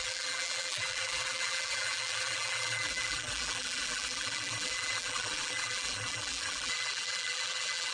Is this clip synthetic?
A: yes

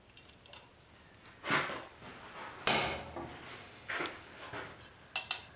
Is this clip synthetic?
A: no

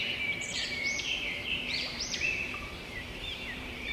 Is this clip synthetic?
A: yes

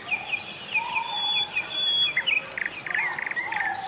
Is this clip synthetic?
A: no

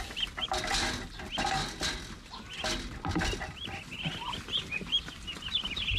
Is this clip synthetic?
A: no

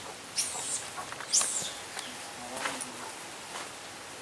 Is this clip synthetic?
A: no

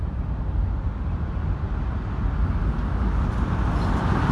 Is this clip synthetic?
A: no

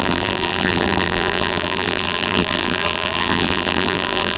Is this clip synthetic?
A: yes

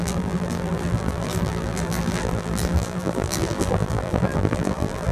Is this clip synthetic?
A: yes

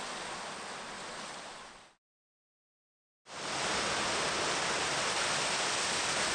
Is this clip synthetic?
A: no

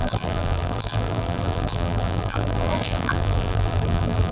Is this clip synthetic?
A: yes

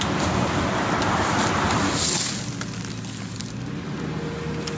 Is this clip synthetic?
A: no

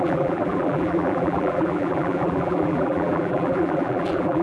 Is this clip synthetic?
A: yes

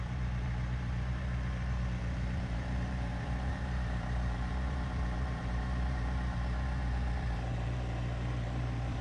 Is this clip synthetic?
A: yes